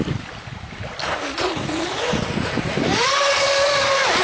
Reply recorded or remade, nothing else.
remade